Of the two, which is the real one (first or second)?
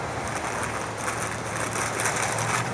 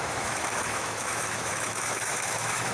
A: first